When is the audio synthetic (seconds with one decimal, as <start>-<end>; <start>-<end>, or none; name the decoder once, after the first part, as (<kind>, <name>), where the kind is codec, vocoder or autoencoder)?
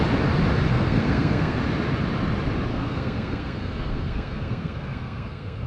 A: 0.7-1.6 (codec, SNAC); 2.7-5.7